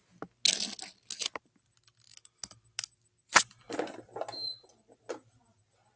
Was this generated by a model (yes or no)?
no